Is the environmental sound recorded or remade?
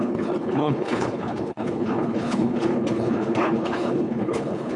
remade